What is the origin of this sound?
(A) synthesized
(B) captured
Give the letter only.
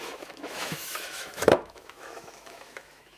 A